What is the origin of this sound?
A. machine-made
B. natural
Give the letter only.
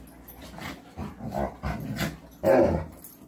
B